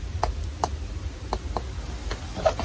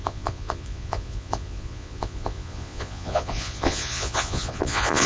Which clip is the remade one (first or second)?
second